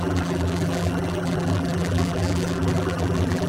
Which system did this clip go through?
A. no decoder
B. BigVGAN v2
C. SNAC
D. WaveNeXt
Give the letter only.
B